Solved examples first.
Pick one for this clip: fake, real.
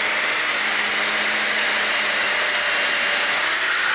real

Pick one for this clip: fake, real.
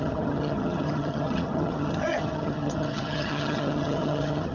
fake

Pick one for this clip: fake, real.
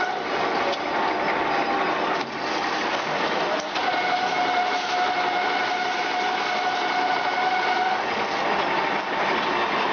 real